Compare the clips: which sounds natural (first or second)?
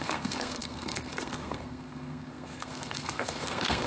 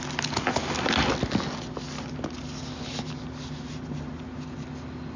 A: second